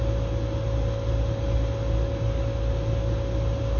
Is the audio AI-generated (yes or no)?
no